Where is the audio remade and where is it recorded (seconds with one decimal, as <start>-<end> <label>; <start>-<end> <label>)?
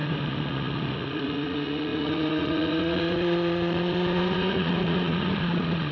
0.0-5.9 remade